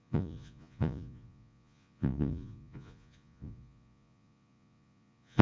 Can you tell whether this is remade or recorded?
remade